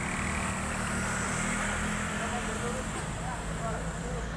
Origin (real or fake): real